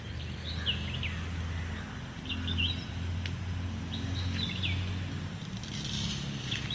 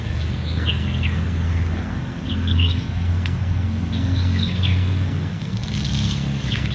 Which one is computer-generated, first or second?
second